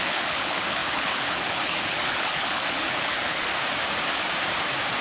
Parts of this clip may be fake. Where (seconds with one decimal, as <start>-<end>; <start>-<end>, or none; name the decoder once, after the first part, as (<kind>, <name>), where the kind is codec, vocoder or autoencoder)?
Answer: 0.0-3.5 (codec, HILCodec)

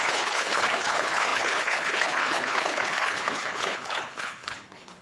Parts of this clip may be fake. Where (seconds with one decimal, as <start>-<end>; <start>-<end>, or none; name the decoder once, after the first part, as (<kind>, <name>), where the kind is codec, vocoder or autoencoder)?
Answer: 0.0-5.0 (codec, HILCodec)

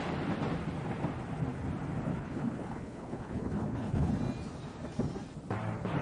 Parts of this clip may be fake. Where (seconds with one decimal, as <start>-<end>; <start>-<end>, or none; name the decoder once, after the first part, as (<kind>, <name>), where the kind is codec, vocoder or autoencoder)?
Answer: 2.1-4.1 (codec, HILCodec)